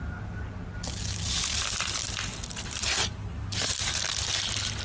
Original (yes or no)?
yes